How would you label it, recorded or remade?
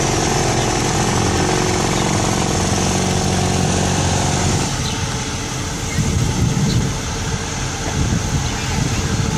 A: recorded